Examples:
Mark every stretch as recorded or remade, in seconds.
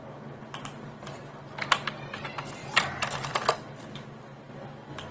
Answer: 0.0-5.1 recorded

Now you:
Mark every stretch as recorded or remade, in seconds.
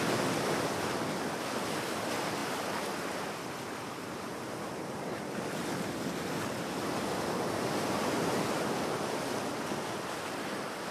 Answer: 0.0-10.9 recorded